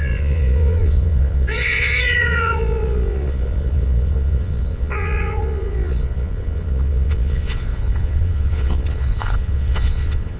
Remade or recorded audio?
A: remade